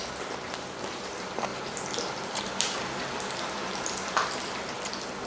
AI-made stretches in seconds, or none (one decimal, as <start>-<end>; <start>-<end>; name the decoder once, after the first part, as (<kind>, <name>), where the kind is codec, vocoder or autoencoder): none